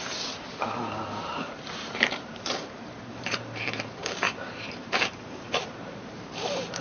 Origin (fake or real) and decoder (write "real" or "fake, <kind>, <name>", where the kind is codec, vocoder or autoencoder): fake, vocoder, BigVGAN v2